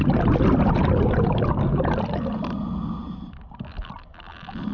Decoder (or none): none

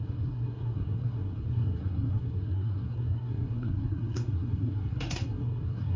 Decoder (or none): codec, SNAC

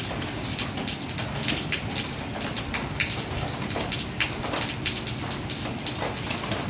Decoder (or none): none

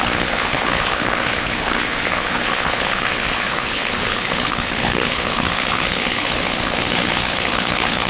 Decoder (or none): codec, HILCodec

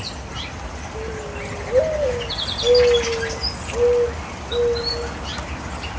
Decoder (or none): none